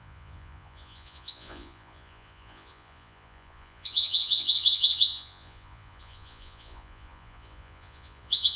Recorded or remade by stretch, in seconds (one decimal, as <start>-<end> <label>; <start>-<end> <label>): 0.0-8.6 remade